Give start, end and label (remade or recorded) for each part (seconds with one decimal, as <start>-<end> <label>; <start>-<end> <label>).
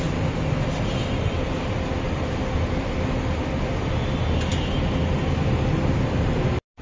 0.0-6.8 recorded